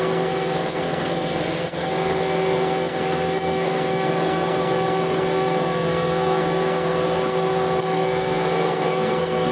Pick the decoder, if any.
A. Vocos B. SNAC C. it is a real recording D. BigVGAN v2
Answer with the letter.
B